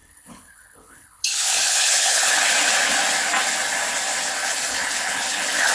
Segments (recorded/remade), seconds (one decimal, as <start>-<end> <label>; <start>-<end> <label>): 0.0-2.5 remade; 2.5-4.4 recorded; 4.4-5.7 remade